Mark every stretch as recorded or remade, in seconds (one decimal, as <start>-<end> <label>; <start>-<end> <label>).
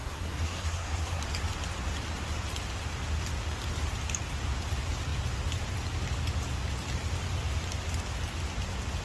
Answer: 0.0-1.2 remade; 1.2-9.0 recorded